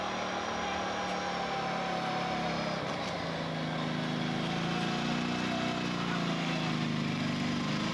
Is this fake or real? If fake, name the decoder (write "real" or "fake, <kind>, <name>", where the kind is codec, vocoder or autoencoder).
real